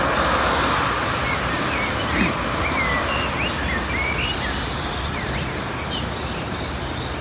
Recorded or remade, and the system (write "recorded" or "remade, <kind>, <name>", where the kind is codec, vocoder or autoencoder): recorded